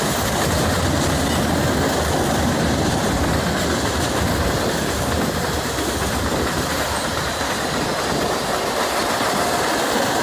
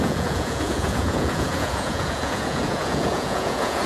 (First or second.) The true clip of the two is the first